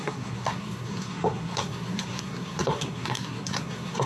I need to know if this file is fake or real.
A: fake